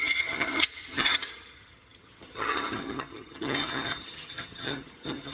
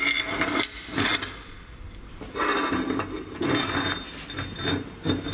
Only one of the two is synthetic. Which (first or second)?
first